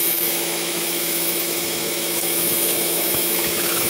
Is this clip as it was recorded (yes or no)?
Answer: no